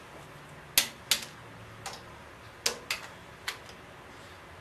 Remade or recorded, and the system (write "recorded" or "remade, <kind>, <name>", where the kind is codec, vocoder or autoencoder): recorded